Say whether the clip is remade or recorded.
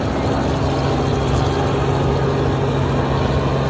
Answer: recorded